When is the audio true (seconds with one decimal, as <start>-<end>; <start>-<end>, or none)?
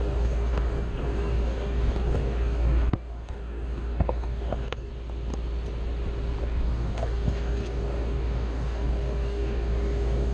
4.9-6.4